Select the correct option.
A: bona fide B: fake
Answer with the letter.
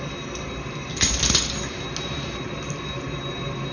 A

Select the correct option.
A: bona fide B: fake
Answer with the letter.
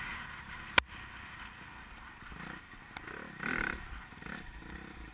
A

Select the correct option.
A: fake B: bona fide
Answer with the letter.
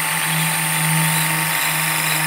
B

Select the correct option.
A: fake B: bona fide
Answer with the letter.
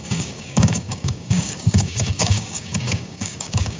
A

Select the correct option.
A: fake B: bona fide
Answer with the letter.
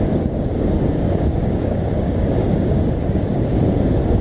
A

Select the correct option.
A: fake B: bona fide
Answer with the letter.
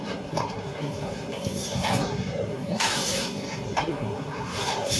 A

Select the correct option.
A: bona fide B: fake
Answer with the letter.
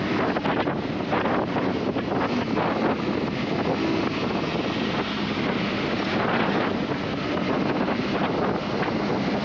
A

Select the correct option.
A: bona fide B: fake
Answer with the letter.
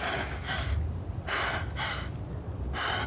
A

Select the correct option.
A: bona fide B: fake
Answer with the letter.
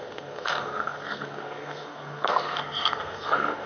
B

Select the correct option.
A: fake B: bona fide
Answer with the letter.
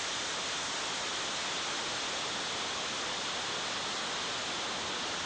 B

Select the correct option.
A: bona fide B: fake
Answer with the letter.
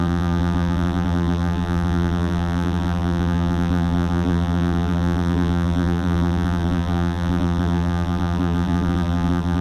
B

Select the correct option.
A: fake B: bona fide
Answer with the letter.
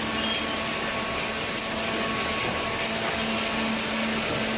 B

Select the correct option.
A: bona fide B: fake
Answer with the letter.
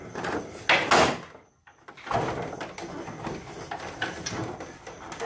A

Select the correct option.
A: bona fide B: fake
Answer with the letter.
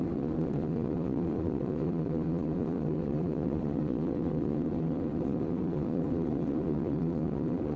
B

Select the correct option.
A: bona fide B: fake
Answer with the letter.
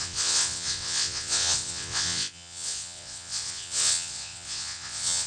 B